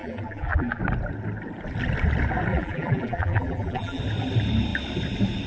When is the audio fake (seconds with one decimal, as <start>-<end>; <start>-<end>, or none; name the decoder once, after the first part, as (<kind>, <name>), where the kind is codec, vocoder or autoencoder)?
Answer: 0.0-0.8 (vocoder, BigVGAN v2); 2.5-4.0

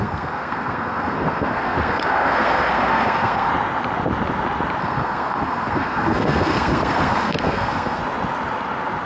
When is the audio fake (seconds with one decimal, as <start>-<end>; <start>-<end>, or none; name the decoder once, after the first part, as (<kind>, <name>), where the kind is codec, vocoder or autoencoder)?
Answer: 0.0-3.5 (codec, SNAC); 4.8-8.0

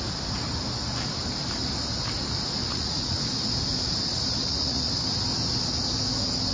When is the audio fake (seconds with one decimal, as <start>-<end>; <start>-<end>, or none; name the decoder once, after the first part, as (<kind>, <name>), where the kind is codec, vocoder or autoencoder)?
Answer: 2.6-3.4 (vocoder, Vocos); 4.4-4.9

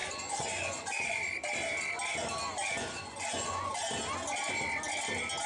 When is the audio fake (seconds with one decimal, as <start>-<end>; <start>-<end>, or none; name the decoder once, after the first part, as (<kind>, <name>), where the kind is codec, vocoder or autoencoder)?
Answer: 0.0-1.2 (vocoder, Vocos); 2.6-3.7

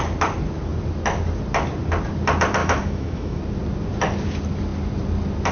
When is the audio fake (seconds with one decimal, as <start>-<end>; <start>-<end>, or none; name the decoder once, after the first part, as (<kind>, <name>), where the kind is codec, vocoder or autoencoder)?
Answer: 2.6-3.4 (autoencoder, DAC-VAE)

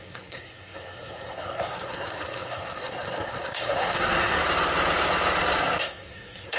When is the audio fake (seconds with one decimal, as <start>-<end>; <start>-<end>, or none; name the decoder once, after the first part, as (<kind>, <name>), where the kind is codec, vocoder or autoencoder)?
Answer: 0.0-4.4 (codec, SNAC); 5.8-6.6